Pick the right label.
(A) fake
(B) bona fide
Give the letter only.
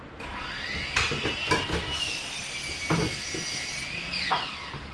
B